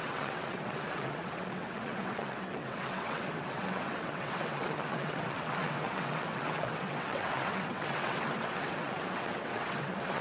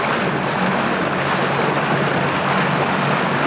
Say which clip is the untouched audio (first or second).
second